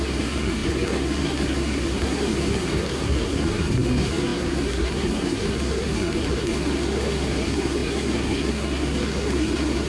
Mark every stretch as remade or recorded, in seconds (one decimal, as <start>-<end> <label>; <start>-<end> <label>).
0.0-9.9 remade